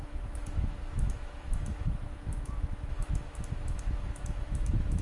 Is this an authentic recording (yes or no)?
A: no